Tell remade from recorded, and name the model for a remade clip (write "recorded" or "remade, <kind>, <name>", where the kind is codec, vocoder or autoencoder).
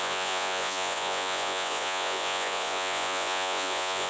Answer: remade, vocoder, Vocos